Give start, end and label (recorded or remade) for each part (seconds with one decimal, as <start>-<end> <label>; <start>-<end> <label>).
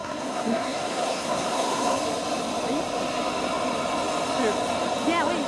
0.0-2.0 remade; 2.0-5.5 recorded